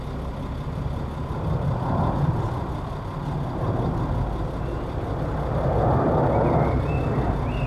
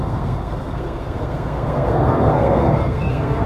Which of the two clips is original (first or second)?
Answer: first